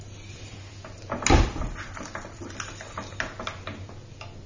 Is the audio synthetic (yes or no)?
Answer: no